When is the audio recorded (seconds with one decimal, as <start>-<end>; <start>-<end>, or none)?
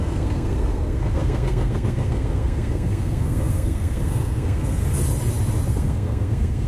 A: 4.8-5.7